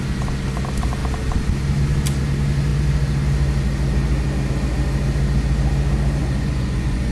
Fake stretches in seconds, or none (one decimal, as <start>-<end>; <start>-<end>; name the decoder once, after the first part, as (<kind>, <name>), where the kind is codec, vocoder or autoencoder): 6.2-7.1 (vocoder, Vocos)